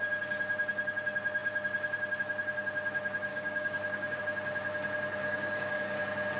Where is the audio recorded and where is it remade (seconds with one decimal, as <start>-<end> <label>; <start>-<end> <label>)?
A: 0.0-3.3 recorded; 3.3-4.2 remade; 4.2-5.2 recorded; 5.2-6.0 remade; 6.0-6.4 recorded